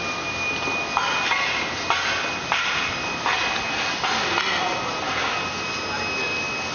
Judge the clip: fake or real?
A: real